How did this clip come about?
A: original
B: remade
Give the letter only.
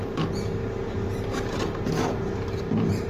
A